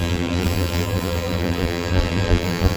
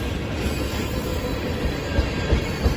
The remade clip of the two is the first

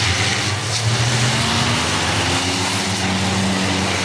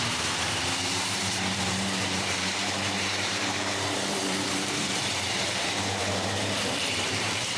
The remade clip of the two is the second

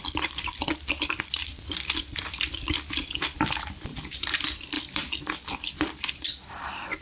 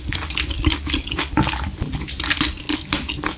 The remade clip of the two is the first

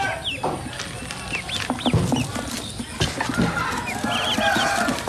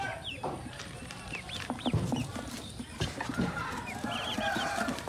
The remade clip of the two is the second